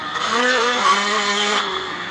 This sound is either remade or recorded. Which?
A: remade